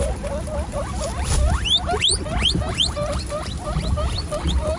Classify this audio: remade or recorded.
recorded